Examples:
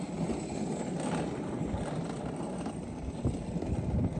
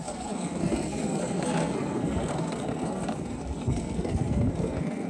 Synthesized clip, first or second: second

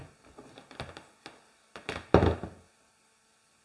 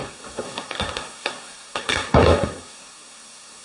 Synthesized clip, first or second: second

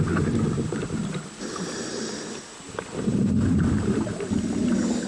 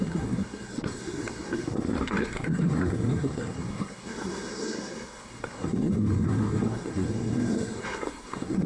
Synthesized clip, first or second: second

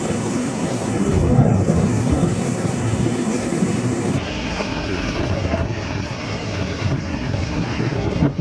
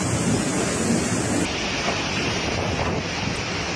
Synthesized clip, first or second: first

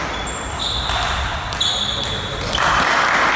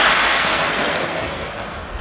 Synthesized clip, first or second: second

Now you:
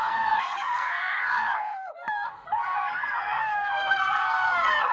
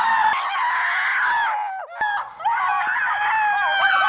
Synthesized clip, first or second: first